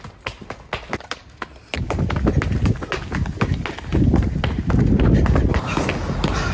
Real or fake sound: real